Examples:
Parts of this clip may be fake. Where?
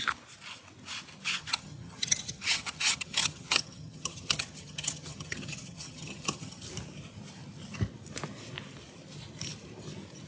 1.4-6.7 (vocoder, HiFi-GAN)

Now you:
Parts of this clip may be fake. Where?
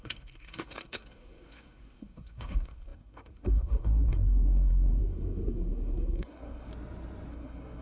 0.0-6.7 (codec, SNAC); 7.3-7.8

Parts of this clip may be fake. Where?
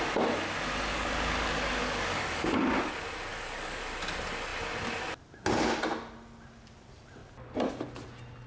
0.9-2.9 (codec, DAC); 3.3-3.8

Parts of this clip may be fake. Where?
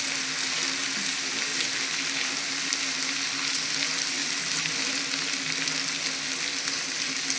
none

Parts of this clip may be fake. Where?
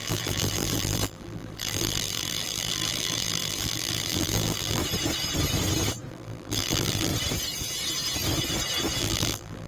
0.0-4.8 (vocoder, BigVGAN v2); 6.1-7.1; 9.0-9.7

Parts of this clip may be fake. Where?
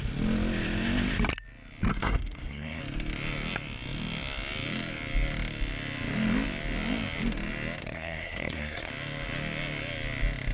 1.9-2.8 (codec, SNAC); 7.8-8.9